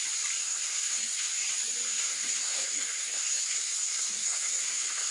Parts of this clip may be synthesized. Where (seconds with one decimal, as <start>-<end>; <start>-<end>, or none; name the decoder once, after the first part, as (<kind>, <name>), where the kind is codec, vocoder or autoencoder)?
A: 0.4-1.3 (codec, SNAC); 1.9-5.1